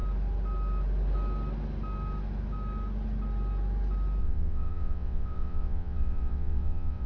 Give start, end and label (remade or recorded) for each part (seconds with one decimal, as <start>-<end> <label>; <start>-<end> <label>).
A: 0.0-4.2 recorded; 4.2-7.1 remade